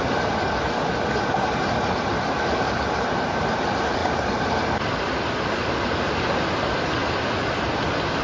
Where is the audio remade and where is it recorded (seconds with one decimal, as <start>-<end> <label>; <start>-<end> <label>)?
0.0-8.2 recorded